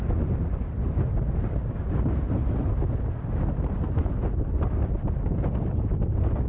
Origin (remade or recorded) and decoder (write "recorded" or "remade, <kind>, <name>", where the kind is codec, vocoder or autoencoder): recorded